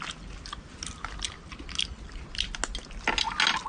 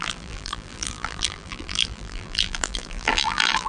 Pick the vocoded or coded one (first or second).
second